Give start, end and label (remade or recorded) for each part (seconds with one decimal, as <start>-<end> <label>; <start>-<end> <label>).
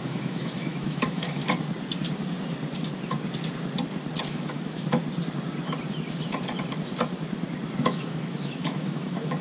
0.0-1.4 remade; 1.4-4.2 recorded; 4.2-5.0 remade; 5.0-7.8 recorded; 7.8-9.4 remade